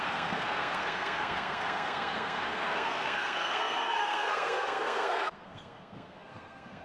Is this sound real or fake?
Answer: fake